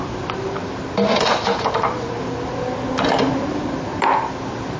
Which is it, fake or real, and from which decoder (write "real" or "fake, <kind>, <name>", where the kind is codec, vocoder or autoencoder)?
real